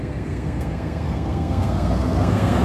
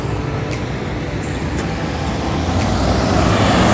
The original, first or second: second